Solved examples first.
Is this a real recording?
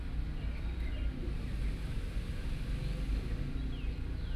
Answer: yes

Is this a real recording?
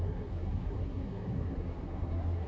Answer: no